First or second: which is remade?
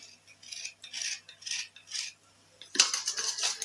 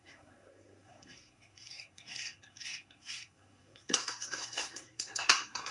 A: second